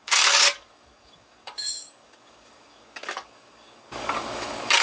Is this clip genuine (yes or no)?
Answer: no